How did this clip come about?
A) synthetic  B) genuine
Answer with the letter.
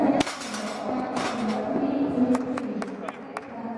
B